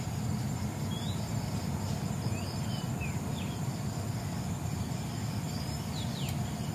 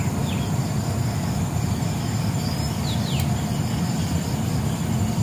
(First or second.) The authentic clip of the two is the second